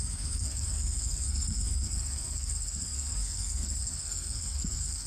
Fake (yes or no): yes